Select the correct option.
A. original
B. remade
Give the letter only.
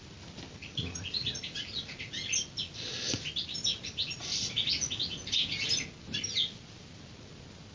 A